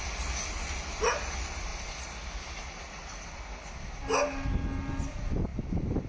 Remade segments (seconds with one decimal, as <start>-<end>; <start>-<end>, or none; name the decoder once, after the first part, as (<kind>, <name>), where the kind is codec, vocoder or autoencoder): none